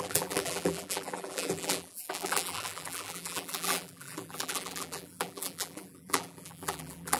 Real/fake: fake